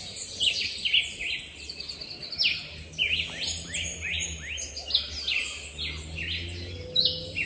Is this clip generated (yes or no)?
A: no